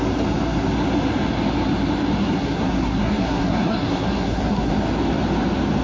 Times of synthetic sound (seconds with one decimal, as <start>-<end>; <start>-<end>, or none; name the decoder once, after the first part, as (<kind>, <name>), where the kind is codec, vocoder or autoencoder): 2.2-4.7 (codec, SNAC)